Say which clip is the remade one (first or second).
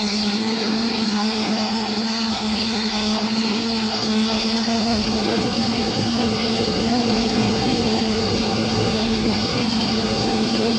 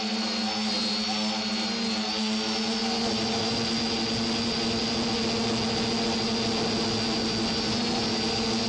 first